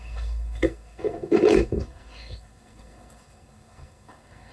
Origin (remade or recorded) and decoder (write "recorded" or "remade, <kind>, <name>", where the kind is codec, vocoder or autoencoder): remade, codec, SNAC